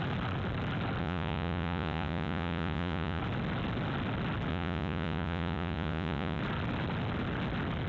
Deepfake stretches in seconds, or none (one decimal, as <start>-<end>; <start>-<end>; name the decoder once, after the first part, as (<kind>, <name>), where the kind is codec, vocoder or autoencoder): 1.0-3.2 (vocoder, Vocos); 4.5-6.4